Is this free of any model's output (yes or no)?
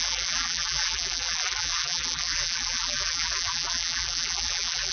no